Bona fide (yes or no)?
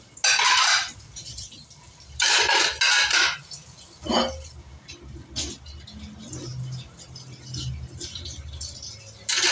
yes